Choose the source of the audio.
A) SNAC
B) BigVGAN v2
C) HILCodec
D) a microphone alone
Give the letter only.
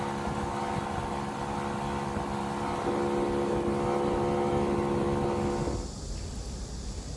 D